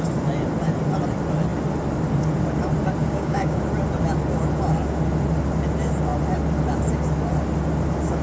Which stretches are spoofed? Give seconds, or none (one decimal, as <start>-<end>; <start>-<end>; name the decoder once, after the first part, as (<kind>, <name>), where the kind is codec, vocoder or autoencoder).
3.0-3.6 (codec, DAC)